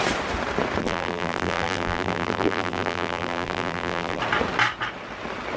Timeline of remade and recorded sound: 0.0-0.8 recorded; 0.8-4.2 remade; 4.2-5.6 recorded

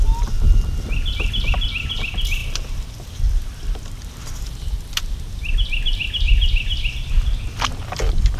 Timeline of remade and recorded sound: 0.0-8.4 recorded

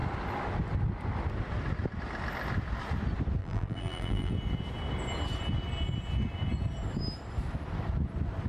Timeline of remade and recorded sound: 0.0-3.4 recorded; 3.4-4.3 remade; 4.3-8.5 recorded

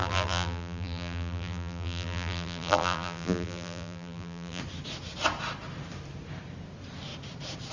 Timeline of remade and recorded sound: 0.0-4.6 remade; 4.6-7.7 recorded

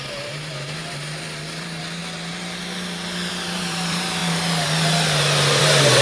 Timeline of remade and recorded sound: 0.0-2.0 remade; 2.0-3.3 recorded; 3.3-6.0 remade

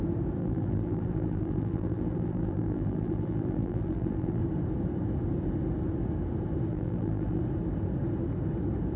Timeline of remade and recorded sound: 0.0-0.4 recorded; 0.4-4.4 remade; 4.4-6.7 recorded; 6.7-7.4 remade; 7.4-9.0 recorded

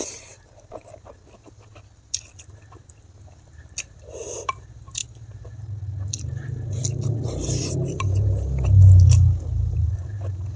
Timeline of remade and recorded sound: 0.0-10.6 recorded

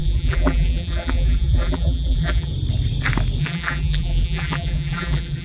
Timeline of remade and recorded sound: 0.0-2.5 remade; 2.5-3.4 recorded; 3.4-5.4 remade